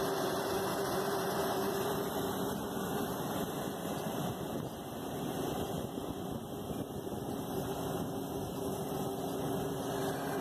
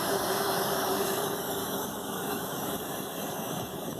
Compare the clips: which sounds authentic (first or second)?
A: first